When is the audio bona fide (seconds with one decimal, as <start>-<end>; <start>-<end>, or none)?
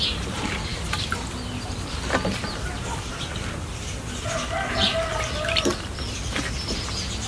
0.0-5.7; 6.4-7.3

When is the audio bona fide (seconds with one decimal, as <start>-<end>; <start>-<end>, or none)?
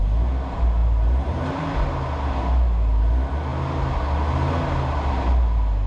0.0-0.8; 1.8-5.9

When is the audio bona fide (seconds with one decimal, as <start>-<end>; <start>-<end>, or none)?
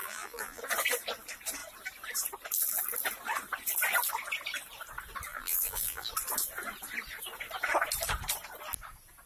0.6-5.3; 6.1-9.3